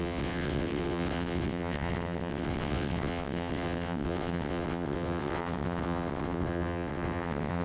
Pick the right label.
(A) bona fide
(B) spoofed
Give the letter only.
B